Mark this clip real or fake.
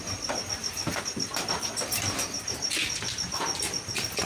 real